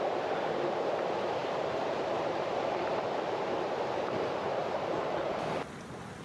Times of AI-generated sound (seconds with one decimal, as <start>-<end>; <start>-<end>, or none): 1.4-4.7